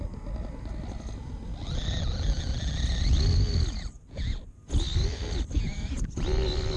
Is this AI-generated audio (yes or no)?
no